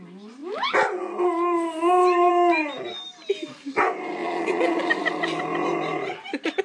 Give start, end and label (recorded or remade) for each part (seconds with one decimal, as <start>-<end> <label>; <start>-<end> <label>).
0.0-4.2 recorded; 4.2-4.9 remade; 4.9-6.6 recorded